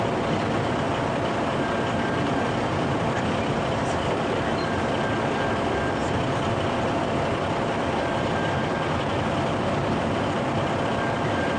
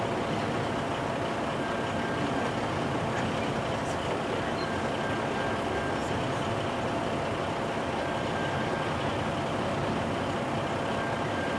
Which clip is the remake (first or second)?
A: first